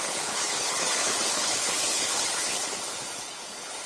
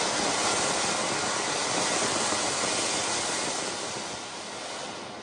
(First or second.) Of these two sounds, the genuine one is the second